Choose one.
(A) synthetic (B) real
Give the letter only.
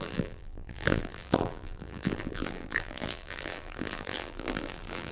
A